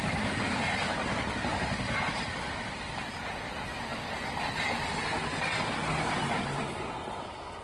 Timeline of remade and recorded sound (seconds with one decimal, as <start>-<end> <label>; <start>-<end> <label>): 0.0-7.6 recorded